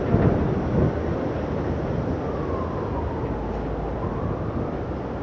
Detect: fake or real real